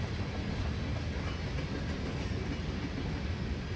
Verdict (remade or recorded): recorded